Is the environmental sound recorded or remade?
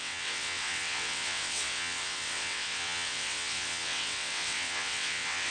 remade